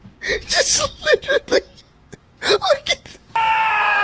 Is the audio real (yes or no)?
no